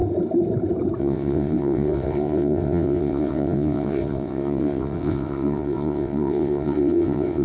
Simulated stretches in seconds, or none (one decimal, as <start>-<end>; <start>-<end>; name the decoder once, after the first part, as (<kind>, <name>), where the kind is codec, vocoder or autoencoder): 1.0-7.4 (vocoder, WaveNeXt)